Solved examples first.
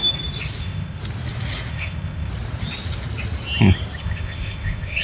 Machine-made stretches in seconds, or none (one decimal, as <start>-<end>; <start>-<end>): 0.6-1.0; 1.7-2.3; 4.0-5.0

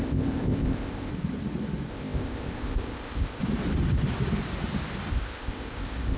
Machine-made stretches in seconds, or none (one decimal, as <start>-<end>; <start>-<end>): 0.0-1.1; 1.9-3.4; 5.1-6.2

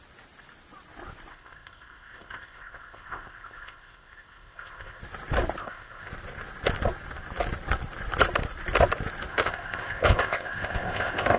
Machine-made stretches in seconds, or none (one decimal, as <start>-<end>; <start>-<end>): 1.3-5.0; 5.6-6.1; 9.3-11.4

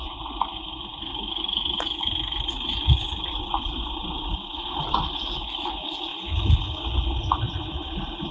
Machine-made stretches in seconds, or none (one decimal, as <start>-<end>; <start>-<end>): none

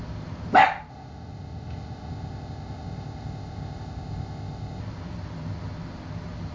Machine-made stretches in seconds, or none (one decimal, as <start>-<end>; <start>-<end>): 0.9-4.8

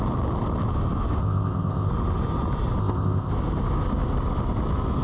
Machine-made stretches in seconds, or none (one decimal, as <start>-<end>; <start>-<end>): 1.2-1.9; 2.8-3.3

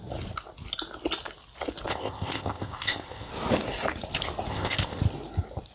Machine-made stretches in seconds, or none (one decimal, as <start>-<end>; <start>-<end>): 1.9-3.3; 4.5-5.0

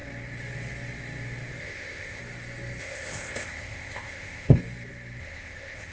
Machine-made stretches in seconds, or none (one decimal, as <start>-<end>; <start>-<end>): 1.6-2.2; 2.8-4.6; 5.2-5.9